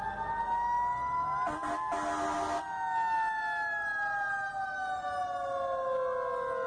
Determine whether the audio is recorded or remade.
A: recorded